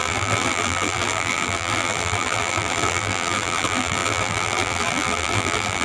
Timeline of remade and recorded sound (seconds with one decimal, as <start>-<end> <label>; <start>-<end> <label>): 0.0-5.8 remade